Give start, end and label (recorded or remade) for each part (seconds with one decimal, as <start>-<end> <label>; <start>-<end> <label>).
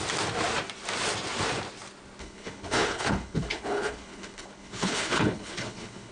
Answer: 0.0-2.2 recorded; 2.2-6.1 remade